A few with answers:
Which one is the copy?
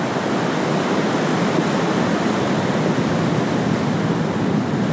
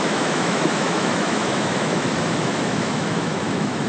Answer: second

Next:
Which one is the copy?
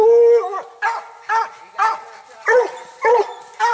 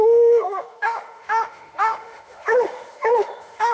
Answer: second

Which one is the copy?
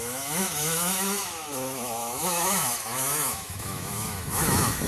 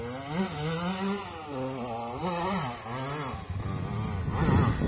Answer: first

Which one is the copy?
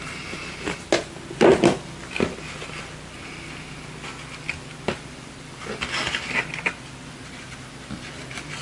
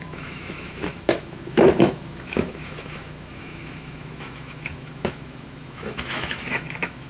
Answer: second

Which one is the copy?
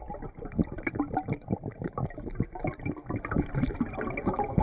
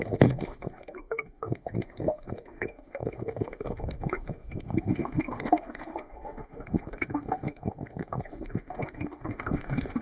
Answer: second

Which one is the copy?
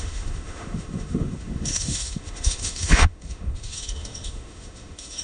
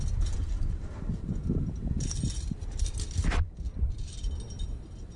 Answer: first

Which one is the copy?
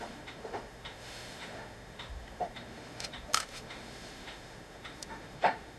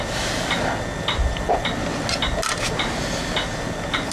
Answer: first